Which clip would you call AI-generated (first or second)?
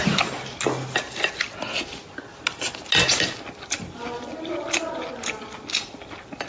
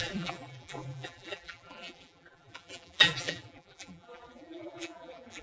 second